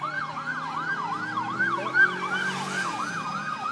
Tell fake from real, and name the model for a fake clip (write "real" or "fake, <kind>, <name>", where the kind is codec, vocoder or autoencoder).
real